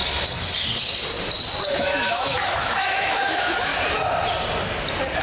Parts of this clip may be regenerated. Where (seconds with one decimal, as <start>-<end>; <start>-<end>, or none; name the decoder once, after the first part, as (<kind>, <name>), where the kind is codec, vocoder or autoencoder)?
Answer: 1.7-3.7 (autoencoder, DAC-VAE)